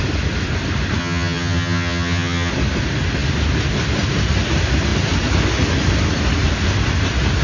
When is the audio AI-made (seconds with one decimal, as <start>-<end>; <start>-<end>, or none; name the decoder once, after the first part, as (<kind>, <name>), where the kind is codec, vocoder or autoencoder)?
1.0-2.5 (vocoder, HiFi-GAN)